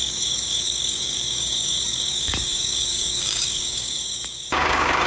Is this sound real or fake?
fake